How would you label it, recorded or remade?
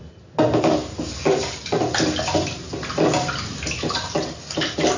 recorded